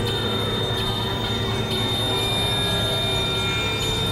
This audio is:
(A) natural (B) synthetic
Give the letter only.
A